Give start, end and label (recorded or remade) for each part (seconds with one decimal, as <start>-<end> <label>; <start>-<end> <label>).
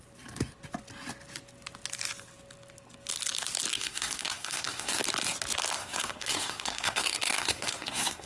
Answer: 0.0-3.7 recorded; 3.7-5.0 remade; 5.0-5.8 recorded; 5.8-8.3 remade